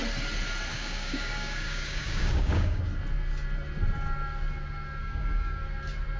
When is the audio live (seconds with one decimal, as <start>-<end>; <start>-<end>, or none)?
0.0-0.7; 2.8-5.0; 5.6-6.2